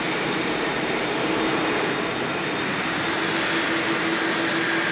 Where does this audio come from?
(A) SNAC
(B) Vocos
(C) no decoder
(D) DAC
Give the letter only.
C